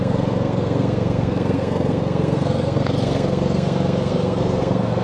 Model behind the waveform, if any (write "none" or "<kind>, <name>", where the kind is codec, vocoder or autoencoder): codec, SNAC